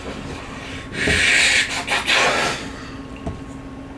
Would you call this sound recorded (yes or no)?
yes